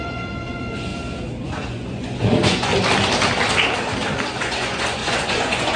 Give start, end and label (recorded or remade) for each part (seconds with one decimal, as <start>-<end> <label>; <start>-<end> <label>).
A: 0.0-0.9 remade; 0.9-1.4 recorded; 1.4-2.7 remade; 2.7-4.3 recorded; 4.3-5.8 remade